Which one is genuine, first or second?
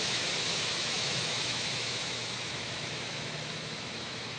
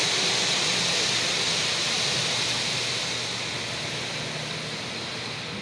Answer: second